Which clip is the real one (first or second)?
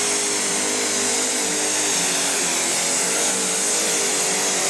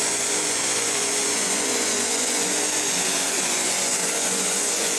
first